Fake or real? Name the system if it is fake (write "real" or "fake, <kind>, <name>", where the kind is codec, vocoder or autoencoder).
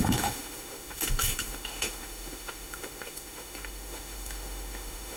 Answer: fake, autoencoder, DAC-VAE